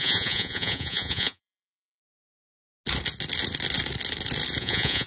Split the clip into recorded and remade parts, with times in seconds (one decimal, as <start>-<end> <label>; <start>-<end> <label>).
0.0-2.0 remade; 2.0-4.6 recorded; 4.6-5.1 remade